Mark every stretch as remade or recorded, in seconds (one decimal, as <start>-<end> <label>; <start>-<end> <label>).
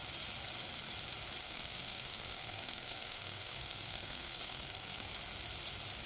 0.0-1.4 recorded; 1.4-5.1 remade; 5.1-6.1 recorded